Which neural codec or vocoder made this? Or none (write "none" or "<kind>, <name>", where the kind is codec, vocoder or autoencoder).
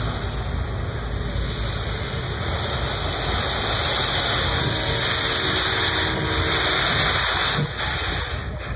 none